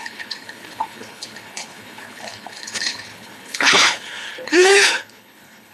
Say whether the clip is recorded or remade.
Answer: remade